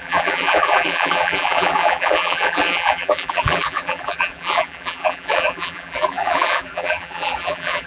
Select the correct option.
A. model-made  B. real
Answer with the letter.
A